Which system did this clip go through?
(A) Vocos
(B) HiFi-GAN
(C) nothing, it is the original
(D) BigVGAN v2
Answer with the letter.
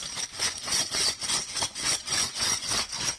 A